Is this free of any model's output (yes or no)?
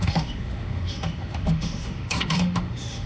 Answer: no